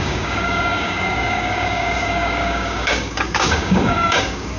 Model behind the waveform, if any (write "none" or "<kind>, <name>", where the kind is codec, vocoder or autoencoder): codec, DAC